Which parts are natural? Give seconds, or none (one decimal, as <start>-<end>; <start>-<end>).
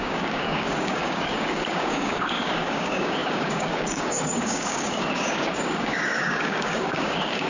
none